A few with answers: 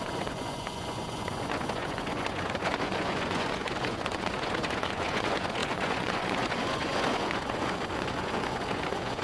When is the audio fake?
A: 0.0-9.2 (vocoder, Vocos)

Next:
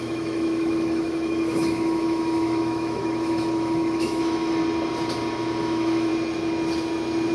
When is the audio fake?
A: 0.0-4.6 (autoencoder, DAC-VAE); 5.6-6.1

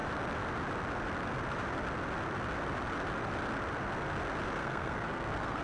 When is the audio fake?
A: 4.6-5.6 (codec, SNAC)

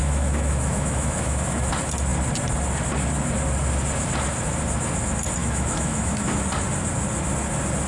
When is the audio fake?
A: 0.0-1.7 (autoencoder, DAC-VAE); 5.4-6.4

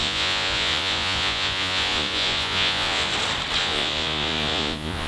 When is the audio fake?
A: 0.0-3.1 (vocoder, Vocos); 3.6-5.1

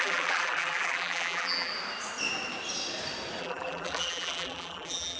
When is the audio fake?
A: 0.0-1.7 (vocoder, BigVGAN v2); 3.4-5.2

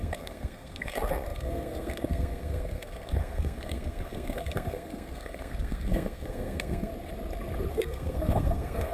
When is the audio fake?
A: 0.0-6.9 (codec, SNAC); 7.7-8.9